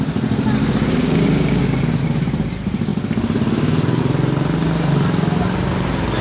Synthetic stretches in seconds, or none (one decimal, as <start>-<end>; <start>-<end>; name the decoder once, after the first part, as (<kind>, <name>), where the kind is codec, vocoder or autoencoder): 0.6-1.6 (codec, DAC)